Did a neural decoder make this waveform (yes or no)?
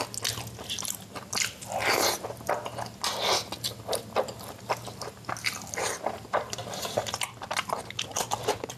no